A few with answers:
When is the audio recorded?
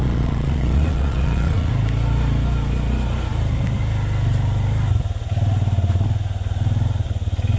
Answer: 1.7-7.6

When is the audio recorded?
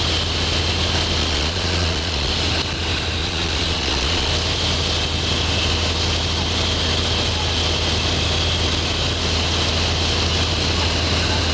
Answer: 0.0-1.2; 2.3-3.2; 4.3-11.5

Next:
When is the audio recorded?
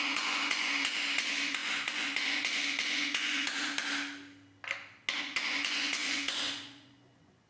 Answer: 3.7-5.2